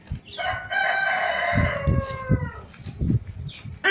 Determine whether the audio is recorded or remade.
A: recorded